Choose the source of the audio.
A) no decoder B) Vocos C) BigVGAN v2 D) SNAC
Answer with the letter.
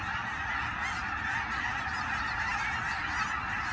A